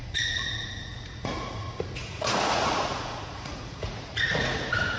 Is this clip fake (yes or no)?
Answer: yes